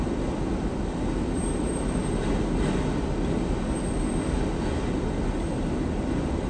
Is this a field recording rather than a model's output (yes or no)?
yes